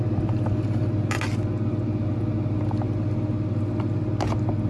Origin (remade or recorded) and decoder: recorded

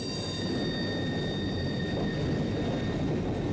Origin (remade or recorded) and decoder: recorded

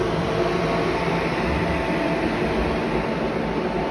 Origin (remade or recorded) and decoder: recorded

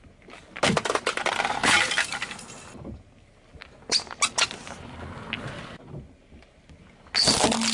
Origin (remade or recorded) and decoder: recorded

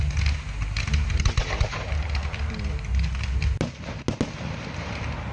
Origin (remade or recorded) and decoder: recorded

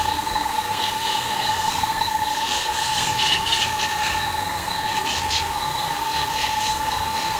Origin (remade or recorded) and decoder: remade, codec, SNAC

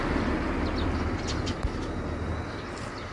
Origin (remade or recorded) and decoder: recorded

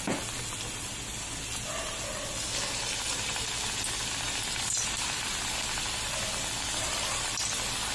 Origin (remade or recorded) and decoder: recorded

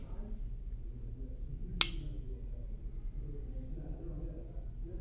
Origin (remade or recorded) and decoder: recorded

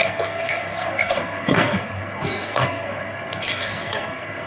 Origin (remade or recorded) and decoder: remade, codec, SNAC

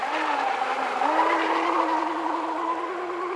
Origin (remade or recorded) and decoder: recorded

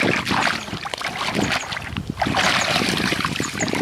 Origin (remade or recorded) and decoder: recorded